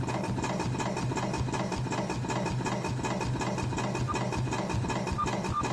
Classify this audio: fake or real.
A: real